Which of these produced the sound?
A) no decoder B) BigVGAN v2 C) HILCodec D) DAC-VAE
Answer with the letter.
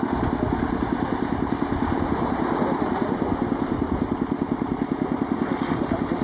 A